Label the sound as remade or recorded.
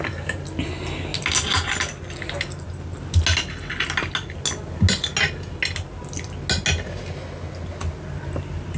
recorded